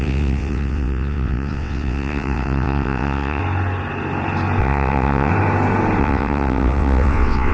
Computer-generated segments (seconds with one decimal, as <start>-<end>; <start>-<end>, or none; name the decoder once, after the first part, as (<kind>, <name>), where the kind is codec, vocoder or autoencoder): 0.0-3.4 (vocoder, WaveNeXt); 4.6-5.3; 6.0-7.5